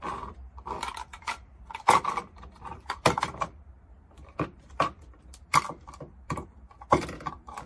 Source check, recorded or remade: remade